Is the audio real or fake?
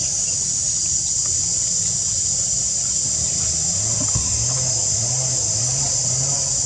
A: real